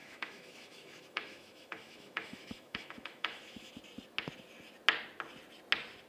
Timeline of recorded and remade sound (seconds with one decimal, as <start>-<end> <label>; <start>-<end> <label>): 0.0-3.7 remade; 3.7-6.1 recorded